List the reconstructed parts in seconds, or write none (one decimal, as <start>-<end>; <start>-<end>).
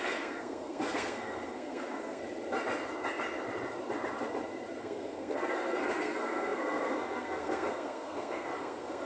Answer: 0.0-2.2; 4.8-9.1